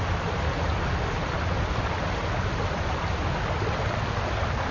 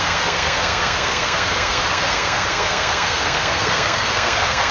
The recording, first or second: first